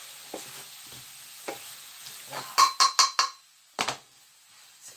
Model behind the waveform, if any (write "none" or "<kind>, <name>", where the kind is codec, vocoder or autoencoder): none